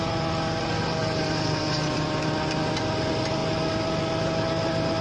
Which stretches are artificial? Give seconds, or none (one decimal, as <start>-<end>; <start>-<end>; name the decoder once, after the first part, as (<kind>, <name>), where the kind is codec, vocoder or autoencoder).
none